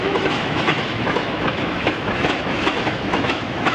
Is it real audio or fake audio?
fake